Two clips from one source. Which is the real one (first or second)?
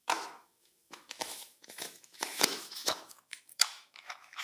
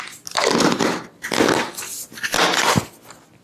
second